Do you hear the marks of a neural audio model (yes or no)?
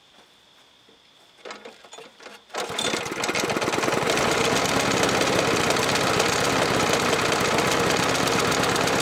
no